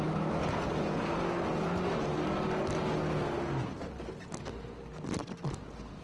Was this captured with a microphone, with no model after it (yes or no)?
yes